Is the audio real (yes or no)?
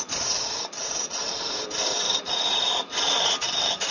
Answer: no